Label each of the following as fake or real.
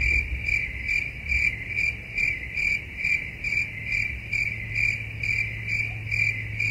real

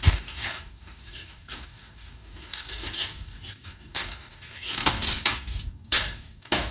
fake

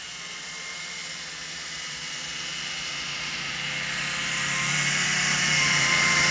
fake